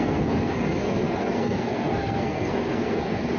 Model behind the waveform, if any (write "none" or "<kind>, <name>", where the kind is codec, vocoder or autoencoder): codec, SNAC